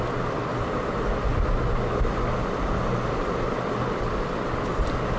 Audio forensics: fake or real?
real